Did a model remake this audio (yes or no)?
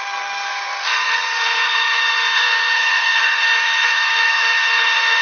yes